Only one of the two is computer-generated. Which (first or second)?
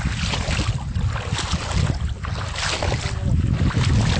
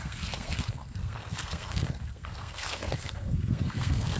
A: second